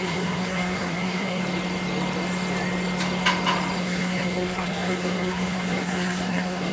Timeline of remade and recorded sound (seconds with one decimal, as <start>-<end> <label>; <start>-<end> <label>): 0.0-1.4 remade; 1.4-3.8 recorded; 3.8-6.7 remade